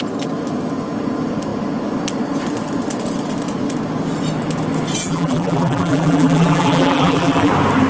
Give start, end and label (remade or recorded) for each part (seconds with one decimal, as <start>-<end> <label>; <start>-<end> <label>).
0.0-5.0 recorded; 5.0-7.5 remade; 7.5-7.9 recorded